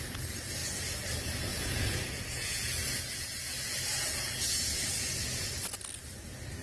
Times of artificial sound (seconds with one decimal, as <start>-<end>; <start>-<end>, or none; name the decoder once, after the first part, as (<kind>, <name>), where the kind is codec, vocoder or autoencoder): 1.5-5.5 (vocoder, Vocos)